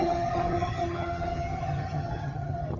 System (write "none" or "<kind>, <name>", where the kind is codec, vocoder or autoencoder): vocoder, HiFi-GAN